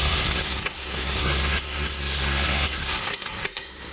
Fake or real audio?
fake